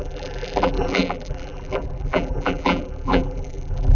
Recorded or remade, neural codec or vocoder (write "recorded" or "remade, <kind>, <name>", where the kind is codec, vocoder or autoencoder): remade, vocoder, BigVGAN v2